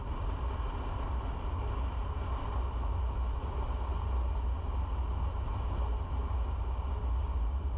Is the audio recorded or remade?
recorded